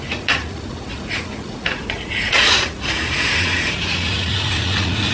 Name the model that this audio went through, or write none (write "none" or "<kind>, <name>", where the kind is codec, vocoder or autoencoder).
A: vocoder, Vocos